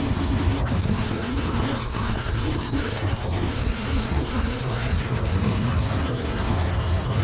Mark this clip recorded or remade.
remade